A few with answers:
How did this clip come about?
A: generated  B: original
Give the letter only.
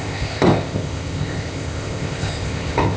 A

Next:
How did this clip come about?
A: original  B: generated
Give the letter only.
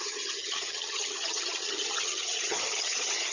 B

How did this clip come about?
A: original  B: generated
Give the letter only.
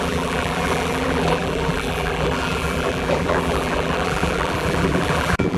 B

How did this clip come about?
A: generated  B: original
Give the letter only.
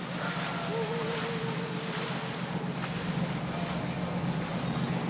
B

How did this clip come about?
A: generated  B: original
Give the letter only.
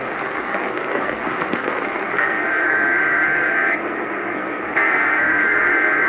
A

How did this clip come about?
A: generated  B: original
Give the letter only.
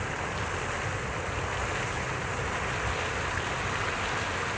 B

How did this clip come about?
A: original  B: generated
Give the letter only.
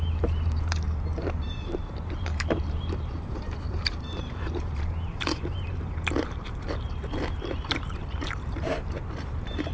B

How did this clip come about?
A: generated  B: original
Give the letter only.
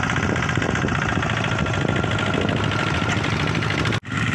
B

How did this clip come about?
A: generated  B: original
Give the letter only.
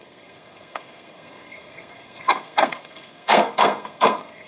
A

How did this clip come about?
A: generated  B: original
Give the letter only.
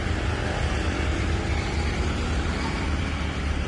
B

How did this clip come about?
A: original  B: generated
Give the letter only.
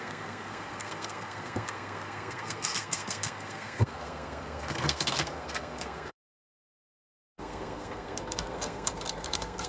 B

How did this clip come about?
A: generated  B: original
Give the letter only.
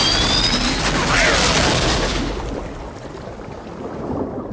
B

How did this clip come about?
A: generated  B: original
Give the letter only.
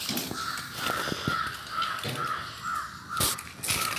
B